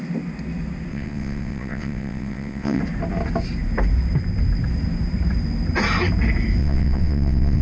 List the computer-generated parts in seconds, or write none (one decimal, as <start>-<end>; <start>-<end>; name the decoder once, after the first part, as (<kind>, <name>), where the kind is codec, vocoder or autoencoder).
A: 0.9-2.8 (vocoder, WaveNeXt); 6.6-7.6